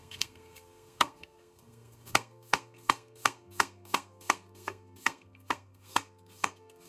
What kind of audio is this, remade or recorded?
remade